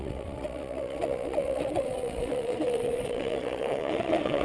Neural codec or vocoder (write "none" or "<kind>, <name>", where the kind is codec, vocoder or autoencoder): vocoder, WaveNeXt